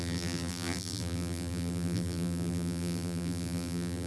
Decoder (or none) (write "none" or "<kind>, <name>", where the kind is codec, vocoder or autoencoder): vocoder, BigVGAN v2